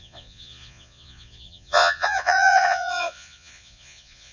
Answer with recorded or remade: remade